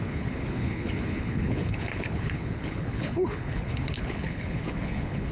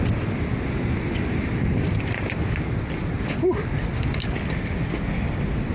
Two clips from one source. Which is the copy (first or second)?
first